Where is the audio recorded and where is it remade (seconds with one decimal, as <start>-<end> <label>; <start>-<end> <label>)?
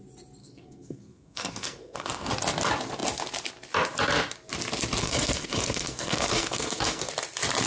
0.0-0.4 recorded; 0.4-2.3 remade; 2.3-5.0 recorded; 5.0-7.1 remade; 7.1-7.7 recorded